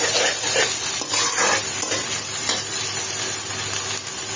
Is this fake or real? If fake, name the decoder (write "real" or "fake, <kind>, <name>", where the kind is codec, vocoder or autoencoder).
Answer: real